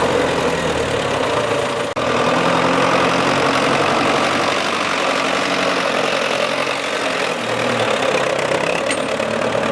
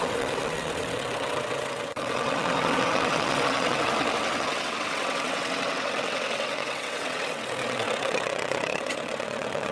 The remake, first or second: second